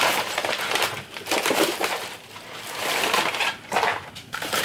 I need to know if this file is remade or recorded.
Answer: remade